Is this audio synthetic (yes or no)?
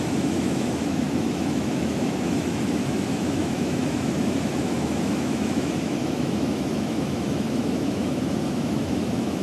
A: yes